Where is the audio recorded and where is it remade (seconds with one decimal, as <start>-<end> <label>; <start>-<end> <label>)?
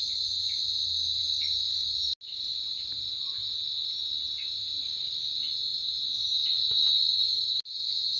0.0-8.2 recorded